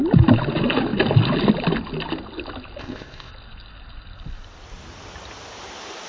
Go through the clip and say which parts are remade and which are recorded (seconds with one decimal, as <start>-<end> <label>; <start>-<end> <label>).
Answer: 0.0-2.8 recorded; 2.8-3.3 remade; 3.3-6.1 recorded